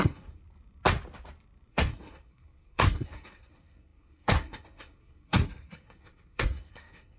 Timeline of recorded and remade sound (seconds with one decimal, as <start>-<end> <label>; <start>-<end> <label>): 0.0-0.4 remade; 0.4-1.7 recorded; 1.7-7.2 remade